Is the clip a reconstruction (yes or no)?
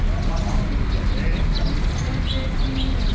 no